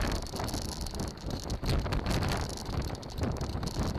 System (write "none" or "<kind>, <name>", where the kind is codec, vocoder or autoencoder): none